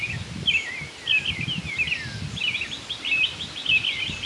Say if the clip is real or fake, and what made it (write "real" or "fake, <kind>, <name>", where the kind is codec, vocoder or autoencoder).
real